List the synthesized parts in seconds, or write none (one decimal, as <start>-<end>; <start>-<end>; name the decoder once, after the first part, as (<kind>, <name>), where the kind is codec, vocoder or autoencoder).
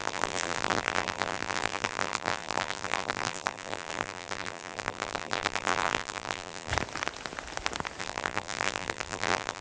0.0-6.7 (vocoder, BigVGAN v2); 8.0-9.6